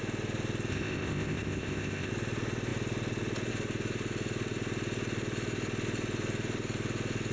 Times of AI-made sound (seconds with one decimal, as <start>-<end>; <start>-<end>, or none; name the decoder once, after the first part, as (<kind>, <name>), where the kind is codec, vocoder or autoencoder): 0.7-2.1 (codec, ZipCodec)